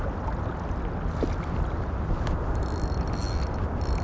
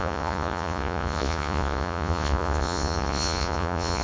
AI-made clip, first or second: second